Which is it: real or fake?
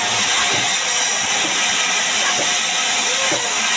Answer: real